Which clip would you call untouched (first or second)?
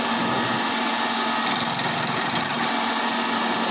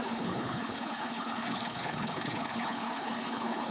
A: first